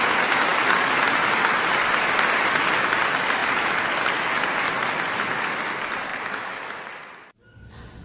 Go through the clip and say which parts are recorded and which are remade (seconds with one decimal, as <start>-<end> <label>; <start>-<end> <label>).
0.0-8.0 recorded